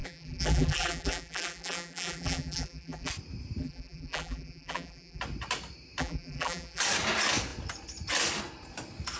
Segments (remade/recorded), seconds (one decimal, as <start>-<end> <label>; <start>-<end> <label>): 0.0-3.1 remade; 3.1-3.6 recorded; 3.6-5.2 remade; 5.2-6.0 recorded; 6.0-6.8 remade; 6.8-9.2 recorded